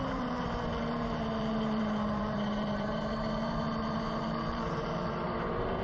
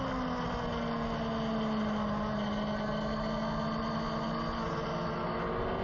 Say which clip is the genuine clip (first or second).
second